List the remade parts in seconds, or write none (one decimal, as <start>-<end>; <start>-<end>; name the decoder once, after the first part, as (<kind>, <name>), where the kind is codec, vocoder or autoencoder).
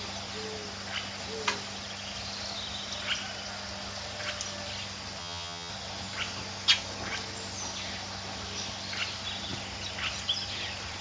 5.2-5.7 (vocoder, HiFi-GAN)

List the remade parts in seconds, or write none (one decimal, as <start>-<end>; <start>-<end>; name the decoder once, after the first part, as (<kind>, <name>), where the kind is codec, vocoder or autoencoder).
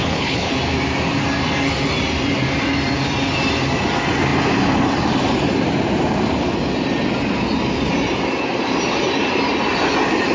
0.0-0.5 (codec, HILCodec)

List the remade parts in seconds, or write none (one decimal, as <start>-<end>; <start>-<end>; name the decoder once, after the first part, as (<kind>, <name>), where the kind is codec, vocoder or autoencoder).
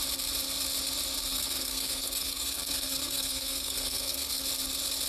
1.3-4.4 (codec, SNAC)